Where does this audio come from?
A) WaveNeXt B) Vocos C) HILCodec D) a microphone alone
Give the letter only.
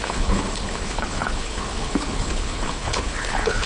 C